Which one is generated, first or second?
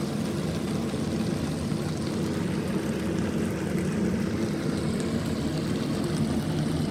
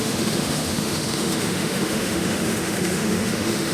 second